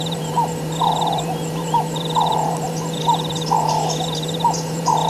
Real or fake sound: fake